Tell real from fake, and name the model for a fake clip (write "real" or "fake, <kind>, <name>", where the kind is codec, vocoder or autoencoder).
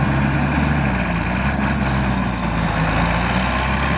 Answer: real